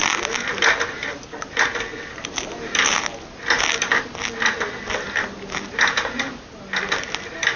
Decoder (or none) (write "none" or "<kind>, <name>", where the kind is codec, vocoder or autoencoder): none